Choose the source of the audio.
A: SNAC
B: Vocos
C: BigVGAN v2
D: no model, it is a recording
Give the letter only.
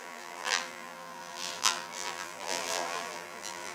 C